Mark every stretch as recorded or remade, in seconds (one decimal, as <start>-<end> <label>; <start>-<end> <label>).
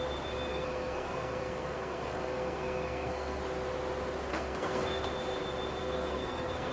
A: 0.0-0.5 recorded; 0.5-3.4 remade; 3.4-4.3 recorded; 4.3-5.0 remade; 5.0-5.8 recorded; 5.8-6.7 remade